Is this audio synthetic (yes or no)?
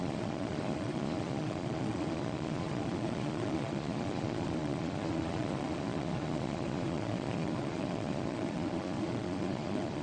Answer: yes